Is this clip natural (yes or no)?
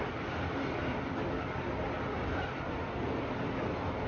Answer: yes